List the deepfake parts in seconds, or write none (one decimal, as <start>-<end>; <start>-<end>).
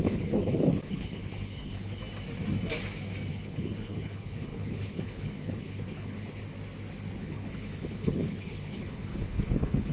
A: 0.0-2.0; 3.3-6.4; 7.2-9.9